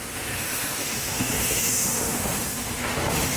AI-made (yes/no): yes